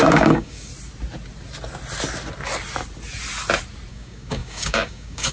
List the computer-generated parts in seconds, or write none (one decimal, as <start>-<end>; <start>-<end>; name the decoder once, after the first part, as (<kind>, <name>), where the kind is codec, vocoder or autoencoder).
0.0-0.7 (codec, DAC); 3.9-5.3